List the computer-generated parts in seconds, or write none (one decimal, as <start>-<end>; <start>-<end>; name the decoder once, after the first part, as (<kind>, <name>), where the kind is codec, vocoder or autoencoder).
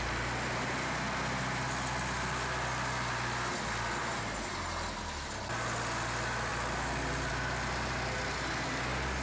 none